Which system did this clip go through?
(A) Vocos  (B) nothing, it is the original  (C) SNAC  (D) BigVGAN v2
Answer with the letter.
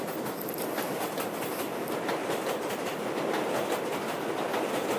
B